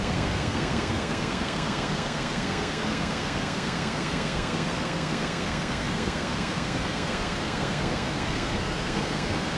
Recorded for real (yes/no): no